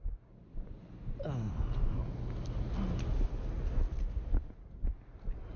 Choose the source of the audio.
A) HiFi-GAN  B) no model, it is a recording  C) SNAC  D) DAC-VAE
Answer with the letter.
B